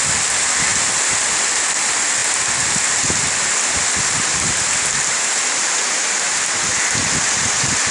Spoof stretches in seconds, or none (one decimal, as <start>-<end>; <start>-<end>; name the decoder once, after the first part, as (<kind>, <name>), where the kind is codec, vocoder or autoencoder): 4.3-7.3 (vocoder, BigVGAN v2)